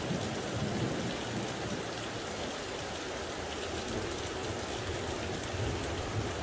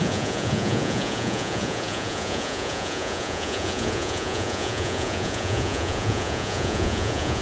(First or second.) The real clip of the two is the first